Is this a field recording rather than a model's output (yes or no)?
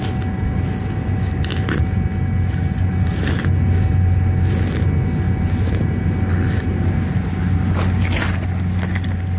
yes